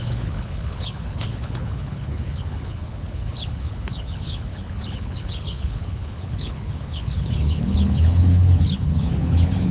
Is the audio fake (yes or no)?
yes